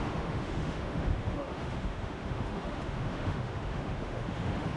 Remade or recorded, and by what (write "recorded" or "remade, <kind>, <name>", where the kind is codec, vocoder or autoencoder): remade, autoencoder, DAC-VAE